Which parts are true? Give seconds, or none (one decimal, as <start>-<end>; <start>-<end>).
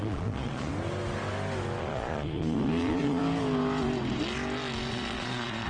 0.7-1.8; 3.2-4.9